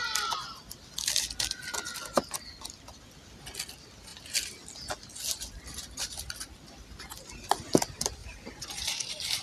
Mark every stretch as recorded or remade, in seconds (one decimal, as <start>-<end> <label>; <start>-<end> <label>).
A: 0.0-8.2 recorded; 8.2-9.0 remade; 9.0-9.4 recorded